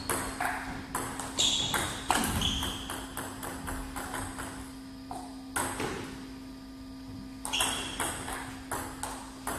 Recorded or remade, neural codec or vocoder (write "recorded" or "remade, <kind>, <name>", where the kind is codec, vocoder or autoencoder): recorded